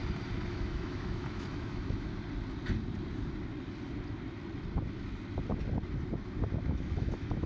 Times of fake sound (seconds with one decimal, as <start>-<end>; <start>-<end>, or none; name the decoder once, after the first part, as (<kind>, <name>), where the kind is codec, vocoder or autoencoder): 0.5-2.1 (autoencoder, DAC-VAE); 6.6-7.5